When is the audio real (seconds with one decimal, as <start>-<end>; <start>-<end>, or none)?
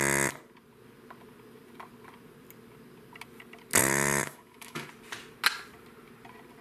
0.0-3.8; 4.9-6.6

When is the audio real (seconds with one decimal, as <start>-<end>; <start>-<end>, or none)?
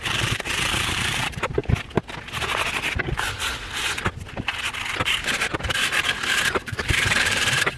1.6-6.3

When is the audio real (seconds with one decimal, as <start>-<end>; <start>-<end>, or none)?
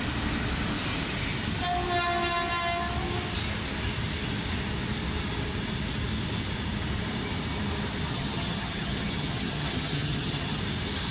0.0-8.1; 10.6-11.1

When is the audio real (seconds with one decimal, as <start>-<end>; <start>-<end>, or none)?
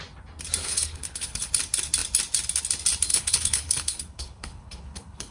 0.0-0.6; 1.5-3.1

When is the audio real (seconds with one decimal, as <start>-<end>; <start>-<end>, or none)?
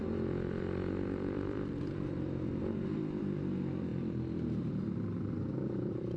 none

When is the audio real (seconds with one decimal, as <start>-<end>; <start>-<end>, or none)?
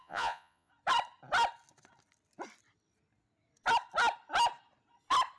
0.7-5.4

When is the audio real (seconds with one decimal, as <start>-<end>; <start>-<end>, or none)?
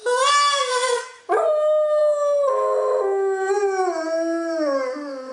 0.0-0.7; 1.2-5.3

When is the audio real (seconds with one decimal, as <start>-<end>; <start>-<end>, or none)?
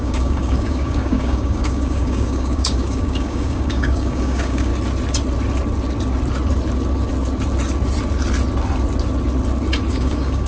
4.7-9.9